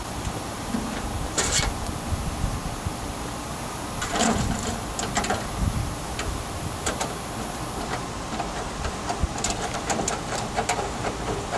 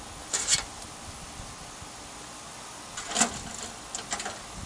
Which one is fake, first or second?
first